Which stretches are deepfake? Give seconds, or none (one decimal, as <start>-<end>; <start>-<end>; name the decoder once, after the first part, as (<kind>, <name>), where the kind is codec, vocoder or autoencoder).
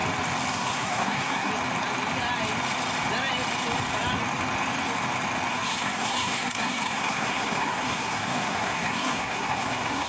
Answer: 0.5-1.5 (codec, SNAC); 5.5-10.1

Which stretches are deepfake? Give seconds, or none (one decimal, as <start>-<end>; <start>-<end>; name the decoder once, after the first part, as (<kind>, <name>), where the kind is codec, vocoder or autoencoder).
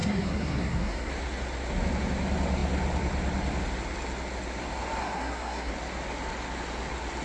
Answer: 0.0-1.1 (codec, SNAC); 5.0-5.7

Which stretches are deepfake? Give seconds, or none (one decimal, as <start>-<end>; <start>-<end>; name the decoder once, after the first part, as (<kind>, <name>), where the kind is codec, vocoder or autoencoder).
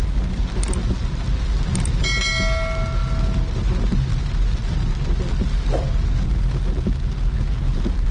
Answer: none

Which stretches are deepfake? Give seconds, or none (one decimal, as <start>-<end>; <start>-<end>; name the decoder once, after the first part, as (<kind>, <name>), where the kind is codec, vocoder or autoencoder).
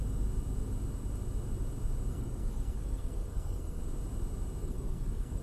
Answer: 2.1-3.8 (codec, SNAC); 4.6-5.4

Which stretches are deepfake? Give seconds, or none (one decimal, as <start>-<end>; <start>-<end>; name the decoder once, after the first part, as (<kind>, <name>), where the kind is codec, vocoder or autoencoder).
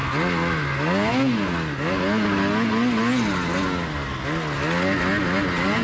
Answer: none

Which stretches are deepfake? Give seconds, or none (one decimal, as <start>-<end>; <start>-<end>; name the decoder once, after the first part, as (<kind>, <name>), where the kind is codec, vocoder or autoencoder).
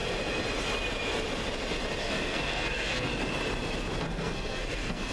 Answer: 2.0-3.1 (codec, SNAC); 4.0-5.1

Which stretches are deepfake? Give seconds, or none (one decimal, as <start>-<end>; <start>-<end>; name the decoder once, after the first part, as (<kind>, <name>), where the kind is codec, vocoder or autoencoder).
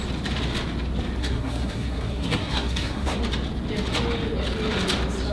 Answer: 1.2-3.2 (codec, SNAC)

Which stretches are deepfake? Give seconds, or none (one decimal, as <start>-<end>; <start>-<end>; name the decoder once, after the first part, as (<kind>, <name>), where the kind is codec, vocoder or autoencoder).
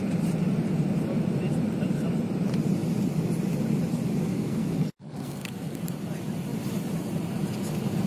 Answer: 4.2-5.8 (codec, SNAC)